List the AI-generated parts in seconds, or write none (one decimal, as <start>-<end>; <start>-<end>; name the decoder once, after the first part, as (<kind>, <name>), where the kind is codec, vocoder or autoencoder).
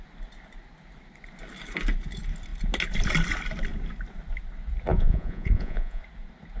4.9-6.0 (vocoder, Vocos)